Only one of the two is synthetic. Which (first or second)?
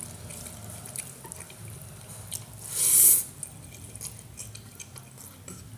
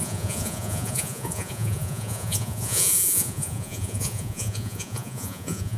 second